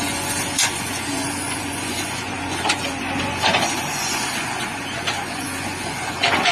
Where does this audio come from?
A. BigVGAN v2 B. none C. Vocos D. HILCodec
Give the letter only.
C